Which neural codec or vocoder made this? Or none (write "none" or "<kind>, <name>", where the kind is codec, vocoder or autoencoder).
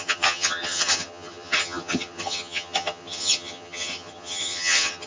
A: vocoder, HiFi-GAN